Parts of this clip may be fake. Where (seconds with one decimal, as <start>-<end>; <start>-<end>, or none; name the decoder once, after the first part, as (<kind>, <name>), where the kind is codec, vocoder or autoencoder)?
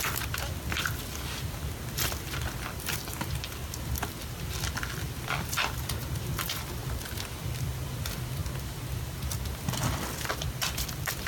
0.0-6.8 (vocoder, BigVGAN v2); 7.4-8.4; 9.8-11.3